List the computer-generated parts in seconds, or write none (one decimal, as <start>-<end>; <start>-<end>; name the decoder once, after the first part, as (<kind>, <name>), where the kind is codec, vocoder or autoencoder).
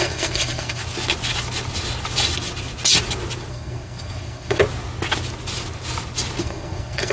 0.0-0.8 (codec, SNAC); 3.5-4.6; 6.4-7.1